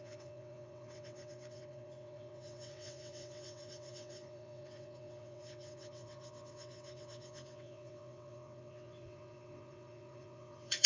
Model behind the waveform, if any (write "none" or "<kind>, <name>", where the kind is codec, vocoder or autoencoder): vocoder, WaveNeXt